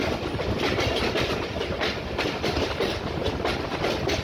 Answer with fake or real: real